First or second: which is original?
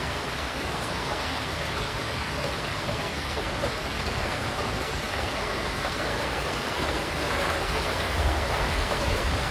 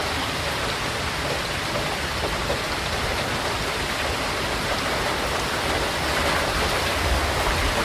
second